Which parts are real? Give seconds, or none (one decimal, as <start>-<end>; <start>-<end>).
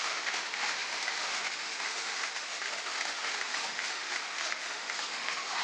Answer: none